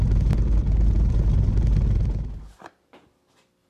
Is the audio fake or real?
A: real